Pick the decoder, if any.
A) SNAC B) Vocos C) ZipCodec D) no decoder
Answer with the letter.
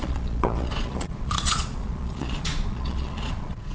B